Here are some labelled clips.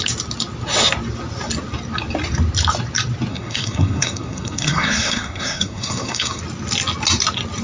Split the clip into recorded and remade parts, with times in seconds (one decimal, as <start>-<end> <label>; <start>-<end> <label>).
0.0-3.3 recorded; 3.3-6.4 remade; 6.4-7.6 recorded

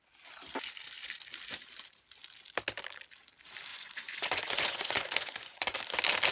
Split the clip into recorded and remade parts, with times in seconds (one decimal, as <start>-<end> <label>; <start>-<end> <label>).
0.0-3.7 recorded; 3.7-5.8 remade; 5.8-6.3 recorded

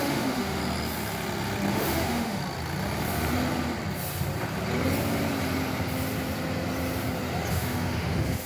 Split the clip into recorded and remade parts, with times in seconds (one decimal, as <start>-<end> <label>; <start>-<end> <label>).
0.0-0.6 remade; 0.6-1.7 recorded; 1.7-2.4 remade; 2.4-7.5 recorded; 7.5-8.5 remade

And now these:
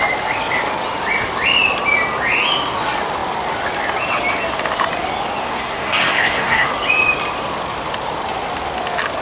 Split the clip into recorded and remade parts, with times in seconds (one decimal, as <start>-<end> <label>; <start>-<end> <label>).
0.0-5.4 recorded; 5.4-6.7 remade; 6.7-9.2 recorded

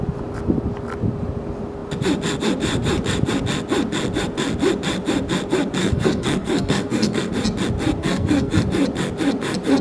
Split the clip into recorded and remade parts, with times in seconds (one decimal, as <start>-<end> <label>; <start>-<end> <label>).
0.0-5.8 recorded; 5.8-7.3 remade; 7.3-8.0 recorded; 8.0-8.6 remade; 8.6-9.8 recorded

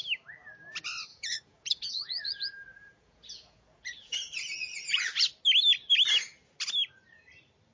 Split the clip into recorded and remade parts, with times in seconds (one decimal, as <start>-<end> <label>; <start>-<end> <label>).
0.0-1.1 recorded; 1.1-5.2 remade; 5.2-7.7 recorded